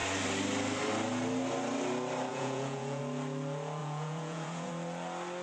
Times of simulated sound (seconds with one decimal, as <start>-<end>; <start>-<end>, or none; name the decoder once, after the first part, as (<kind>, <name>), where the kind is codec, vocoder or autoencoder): 2.3-3.0 (vocoder, Vocos); 3.8-4.7